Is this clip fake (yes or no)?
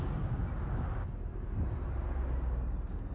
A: no